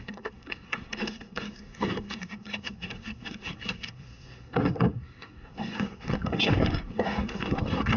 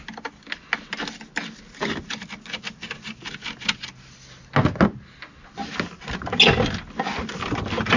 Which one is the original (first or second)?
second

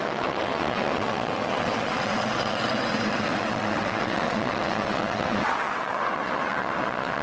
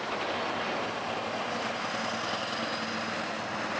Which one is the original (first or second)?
second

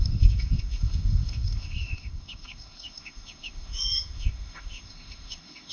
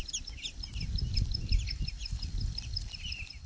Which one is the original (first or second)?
second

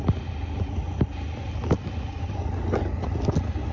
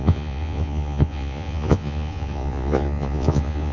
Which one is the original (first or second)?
first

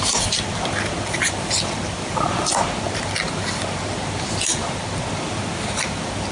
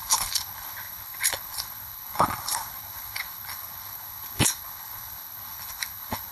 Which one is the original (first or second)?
first